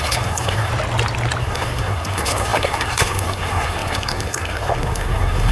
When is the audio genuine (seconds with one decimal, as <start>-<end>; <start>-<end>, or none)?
0.7-1.4